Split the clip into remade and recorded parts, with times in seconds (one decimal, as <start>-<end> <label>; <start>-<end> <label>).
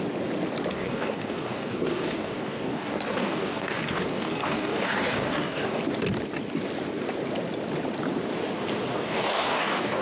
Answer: 0.0-0.7 recorded; 0.7-5.8 remade; 5.8-8.9 recorded; 8.9-10.0 remade